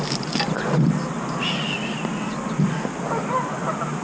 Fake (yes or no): no